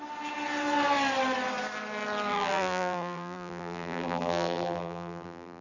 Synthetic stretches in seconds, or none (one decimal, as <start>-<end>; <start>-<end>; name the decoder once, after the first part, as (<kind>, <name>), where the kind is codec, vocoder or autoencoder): 2.3-5.6 (vocoder, BigVGAN v2)